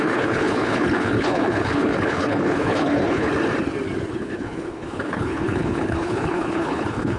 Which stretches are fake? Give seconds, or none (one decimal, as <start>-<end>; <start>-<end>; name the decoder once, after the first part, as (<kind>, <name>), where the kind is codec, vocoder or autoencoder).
0.0-3.3 (codec, HILCodec); 4.1-7.2